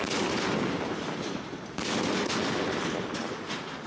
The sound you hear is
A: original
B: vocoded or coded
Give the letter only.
A